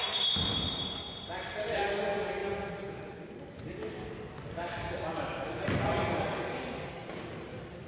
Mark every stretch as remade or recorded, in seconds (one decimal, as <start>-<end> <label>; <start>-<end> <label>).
0.0-7.9 recorded